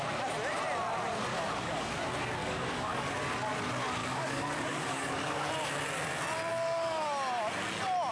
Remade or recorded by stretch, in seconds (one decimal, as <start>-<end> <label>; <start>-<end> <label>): 0.0-1.3 recorded; 1.3-1.9 remade; 1.9-2.4 recorded; 2.4-3.2 remade; 3.2-4.0 recorded; 4.0-5.4 remade; 5.4-6.5 recorded; 6.5-7.0 remade; 7.0-8.1 recorded